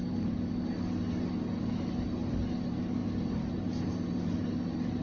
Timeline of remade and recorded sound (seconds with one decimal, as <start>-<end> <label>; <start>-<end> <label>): 0.0-5.0 recorded